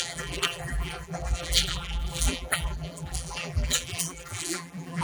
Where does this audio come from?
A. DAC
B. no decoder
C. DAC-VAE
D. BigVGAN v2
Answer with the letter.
D